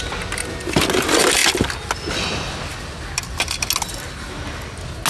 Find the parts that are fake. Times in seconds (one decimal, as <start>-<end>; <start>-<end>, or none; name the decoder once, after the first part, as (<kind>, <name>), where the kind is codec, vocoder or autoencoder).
none